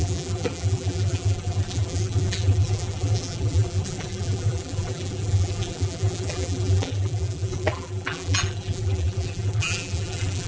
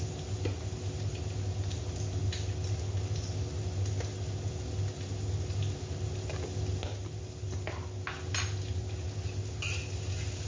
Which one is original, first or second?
second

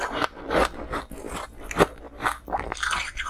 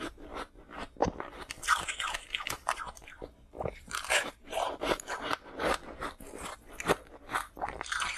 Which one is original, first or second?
first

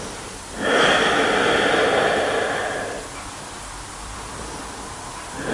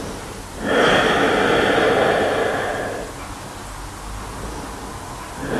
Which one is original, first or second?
second